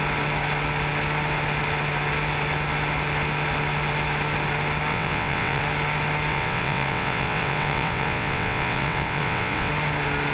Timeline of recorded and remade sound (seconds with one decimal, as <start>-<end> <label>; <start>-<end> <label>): 0.0-4.9 recorded; 4.9-5.6 remade; 5.6-6.3 recorded; 6.3-9.7 remade; 9.7-10.3 recorded